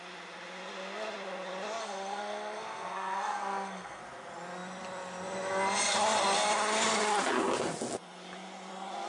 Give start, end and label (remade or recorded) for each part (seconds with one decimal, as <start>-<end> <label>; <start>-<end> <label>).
0.0-1.8 recorded; 1.8-4.0 remade; 4.0-9.1 recorded